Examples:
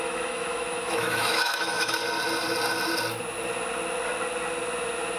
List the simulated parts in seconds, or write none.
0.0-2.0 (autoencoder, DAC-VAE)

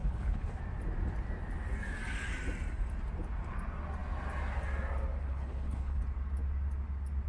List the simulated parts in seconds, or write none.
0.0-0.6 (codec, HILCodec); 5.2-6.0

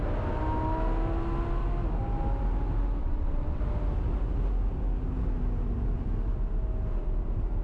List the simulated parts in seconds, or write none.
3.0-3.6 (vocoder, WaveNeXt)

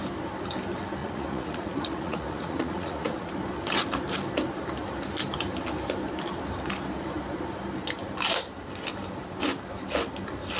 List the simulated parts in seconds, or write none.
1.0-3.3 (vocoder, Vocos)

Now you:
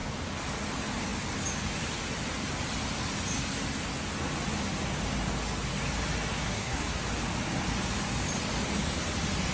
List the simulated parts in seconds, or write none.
6.4-7.0 (codec, SNAC)

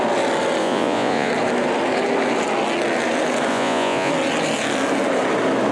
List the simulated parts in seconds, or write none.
0.6-1.3 (vocoder, Vocos); 3.5-4.1

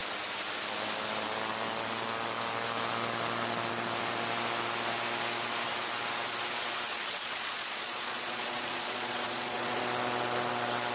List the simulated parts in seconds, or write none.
6.9-9.8 (vocoder, Vocos)

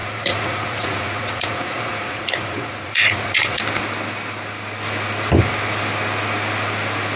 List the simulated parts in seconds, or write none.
0.0-3.6 (vocoder, Vocos)